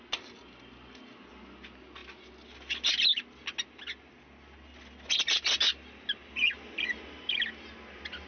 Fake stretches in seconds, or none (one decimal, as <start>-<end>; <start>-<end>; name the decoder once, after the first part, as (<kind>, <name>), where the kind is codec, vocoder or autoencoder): none